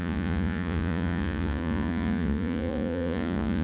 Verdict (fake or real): fake